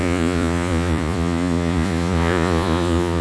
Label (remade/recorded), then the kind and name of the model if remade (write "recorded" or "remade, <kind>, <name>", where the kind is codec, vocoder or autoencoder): remade, vocoder, Vocos